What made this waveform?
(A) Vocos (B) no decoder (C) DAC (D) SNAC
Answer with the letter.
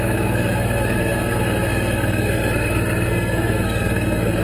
D